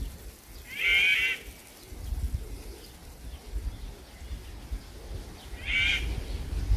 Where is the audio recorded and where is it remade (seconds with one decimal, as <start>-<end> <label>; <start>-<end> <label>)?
0.0-6.8 recorded